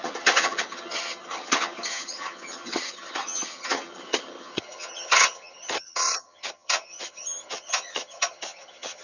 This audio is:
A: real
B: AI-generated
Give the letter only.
B